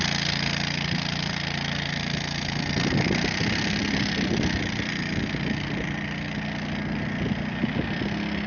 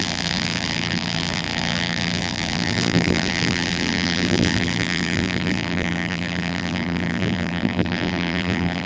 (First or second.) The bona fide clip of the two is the first